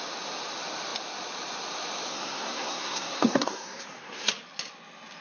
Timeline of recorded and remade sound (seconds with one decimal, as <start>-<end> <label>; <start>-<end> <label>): 0.0-2.1 recorded; 2.1-4.3 remade; 4.3-5.2 recorded